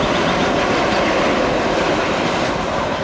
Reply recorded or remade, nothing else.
recorded